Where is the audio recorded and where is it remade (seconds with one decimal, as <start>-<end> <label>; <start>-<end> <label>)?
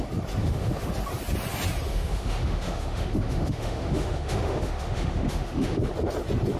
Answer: 0.0-0.4 recorded; 0.4-0.9 remade; 0.9-1.9 recorded; 1.9-5.9 remade; 5.9-6.6 recorded